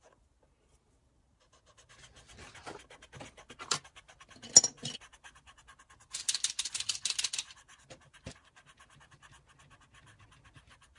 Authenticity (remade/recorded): recorded